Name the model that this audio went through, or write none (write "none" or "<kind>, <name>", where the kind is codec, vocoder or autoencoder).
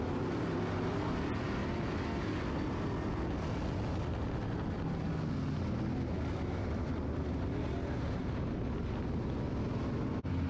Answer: none